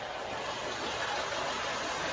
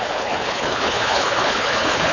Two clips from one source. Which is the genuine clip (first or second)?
first